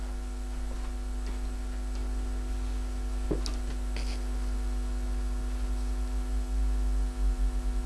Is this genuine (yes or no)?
yes